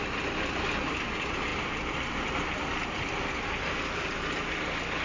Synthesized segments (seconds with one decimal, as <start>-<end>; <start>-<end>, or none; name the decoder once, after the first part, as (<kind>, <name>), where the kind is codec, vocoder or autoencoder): 1.5-4.5 (vocoder, BigVGAN v2)